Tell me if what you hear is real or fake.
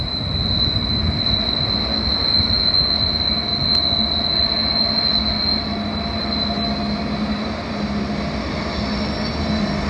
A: real